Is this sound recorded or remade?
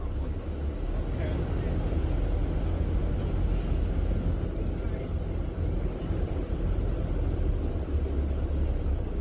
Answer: recorded